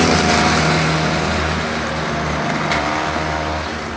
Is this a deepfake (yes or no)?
no